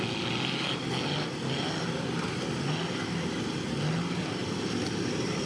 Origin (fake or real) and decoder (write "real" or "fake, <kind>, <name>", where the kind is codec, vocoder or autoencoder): real